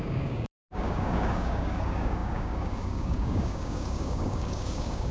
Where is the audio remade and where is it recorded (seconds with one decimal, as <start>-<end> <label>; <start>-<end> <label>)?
0.0-5.1 remade